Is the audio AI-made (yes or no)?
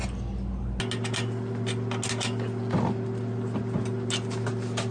no